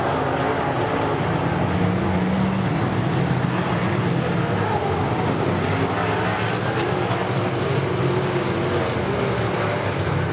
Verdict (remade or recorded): recorded